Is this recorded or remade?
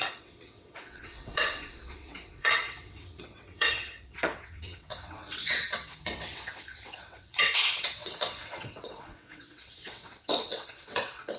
remade